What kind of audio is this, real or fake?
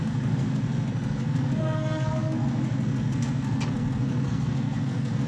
fake